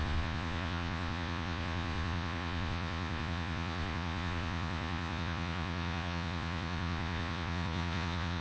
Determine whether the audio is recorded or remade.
remade